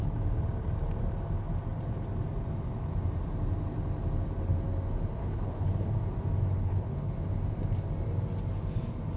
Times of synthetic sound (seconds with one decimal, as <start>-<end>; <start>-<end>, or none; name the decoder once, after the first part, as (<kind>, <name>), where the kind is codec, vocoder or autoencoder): 5.2-5.9 (codec, HILCodec); 6.6-7.1